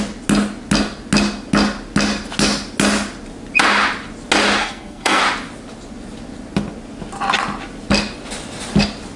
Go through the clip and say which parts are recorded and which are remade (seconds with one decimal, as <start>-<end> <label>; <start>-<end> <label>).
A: 0.0-4.6 recorded; 4.6-5.2 remade; 5.2-9.2 recorded